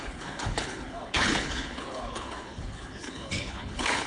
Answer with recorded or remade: remade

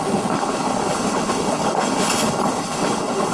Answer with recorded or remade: remade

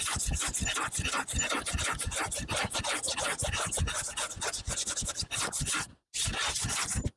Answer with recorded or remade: recorded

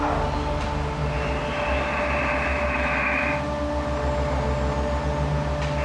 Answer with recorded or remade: recorded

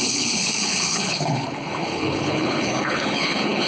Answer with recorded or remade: remade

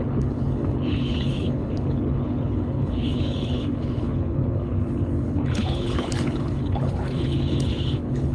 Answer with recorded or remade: remade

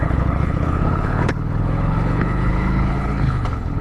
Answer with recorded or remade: remade